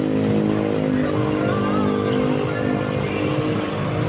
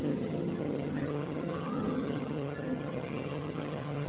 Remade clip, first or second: second